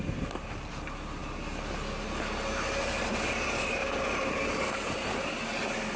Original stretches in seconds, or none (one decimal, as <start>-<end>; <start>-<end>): 0.0-3.8; 4.5-6.0